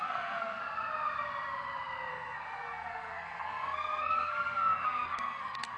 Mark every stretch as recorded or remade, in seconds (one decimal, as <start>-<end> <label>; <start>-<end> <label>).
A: 0.0-0.6 remade; 0.6-2.1 recorded; 2.1-5.8 remade